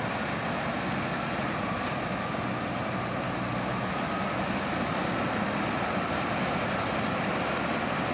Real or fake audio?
real